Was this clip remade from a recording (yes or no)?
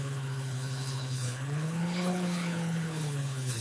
yes